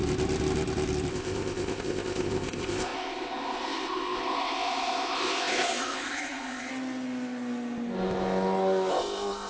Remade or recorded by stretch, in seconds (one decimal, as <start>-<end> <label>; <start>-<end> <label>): 0.0-1.1 recorded; 1.1-6.7 remade; 6.7-8.9 recorded; 8.9-9.5 remade